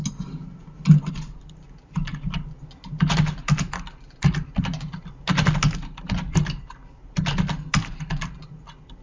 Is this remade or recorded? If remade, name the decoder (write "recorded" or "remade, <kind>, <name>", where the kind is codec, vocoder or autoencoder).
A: recorded